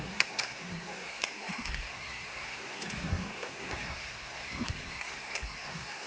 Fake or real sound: fake